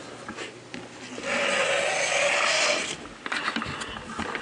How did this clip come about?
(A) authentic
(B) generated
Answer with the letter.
A